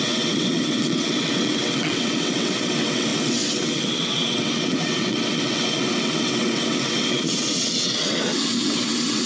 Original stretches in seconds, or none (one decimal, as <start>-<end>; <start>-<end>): none